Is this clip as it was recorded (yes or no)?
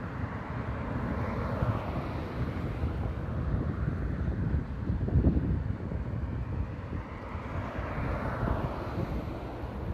yes